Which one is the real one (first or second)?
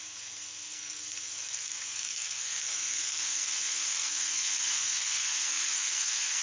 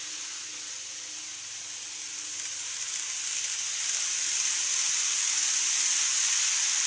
second